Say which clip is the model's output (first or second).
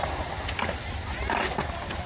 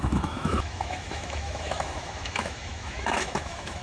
second